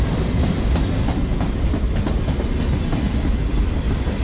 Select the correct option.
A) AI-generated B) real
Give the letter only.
A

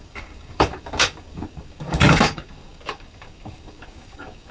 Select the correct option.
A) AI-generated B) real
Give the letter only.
A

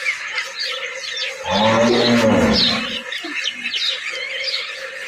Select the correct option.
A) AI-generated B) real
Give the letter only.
B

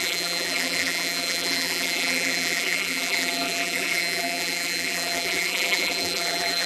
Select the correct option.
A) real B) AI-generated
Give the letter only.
B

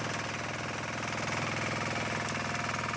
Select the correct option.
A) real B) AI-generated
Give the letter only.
A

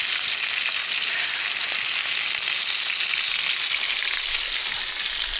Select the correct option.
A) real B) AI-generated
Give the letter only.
A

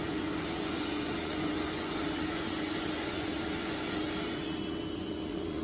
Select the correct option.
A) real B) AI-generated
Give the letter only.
B